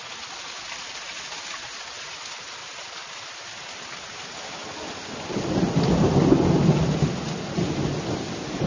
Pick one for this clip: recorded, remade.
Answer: recorded